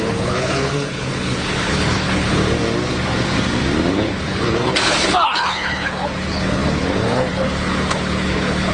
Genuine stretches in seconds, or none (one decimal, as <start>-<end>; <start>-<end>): 2.4-3.9

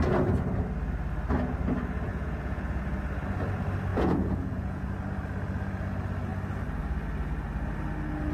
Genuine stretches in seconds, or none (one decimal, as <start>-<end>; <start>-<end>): 0.0-2.1; 2.8-3.9; 4.9-8.3

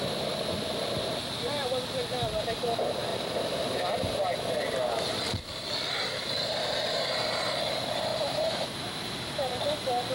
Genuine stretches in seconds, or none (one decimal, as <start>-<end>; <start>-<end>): 0.0-8.1; 9.6-10.1

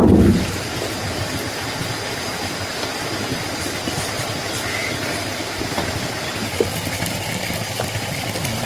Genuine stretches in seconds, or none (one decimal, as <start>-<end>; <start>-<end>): 0.0-8.7

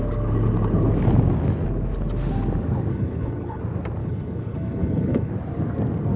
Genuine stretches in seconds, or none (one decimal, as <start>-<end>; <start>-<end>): 0.0-2.9; 3.6-4.0; 5.3-6.2

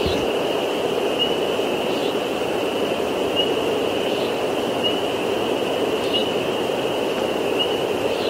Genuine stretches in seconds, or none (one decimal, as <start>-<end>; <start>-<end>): 0.0-8.3

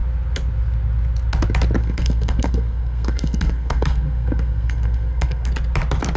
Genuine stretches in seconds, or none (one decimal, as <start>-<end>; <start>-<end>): 0.0-1.8; 5.5-6.2